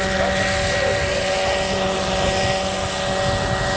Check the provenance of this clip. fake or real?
real